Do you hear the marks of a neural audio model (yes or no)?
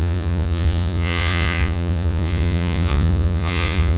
yes